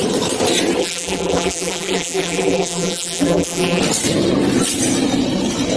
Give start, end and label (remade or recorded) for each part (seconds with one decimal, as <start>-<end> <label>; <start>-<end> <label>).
0.0-0.8 recorded; 0.8-3.8 remade; 3.8-5.8 recorded